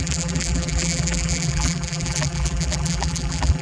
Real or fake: fake